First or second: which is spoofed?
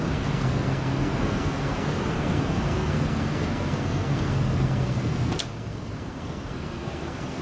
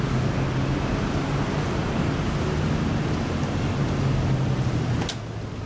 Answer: first